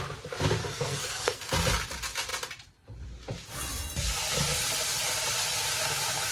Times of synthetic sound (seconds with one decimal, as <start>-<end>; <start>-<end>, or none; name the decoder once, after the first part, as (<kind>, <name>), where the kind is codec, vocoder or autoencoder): 0.6-1.5 (codec, SNAC)